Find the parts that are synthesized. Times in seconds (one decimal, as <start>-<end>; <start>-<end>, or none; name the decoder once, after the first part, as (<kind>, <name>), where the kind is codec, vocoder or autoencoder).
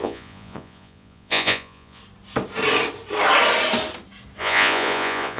0.0-2.0 (vocoder, Vocos); 4.4-5.4